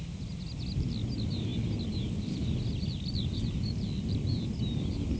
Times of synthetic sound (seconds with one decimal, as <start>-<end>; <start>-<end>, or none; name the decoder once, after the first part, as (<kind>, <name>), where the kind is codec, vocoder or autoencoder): none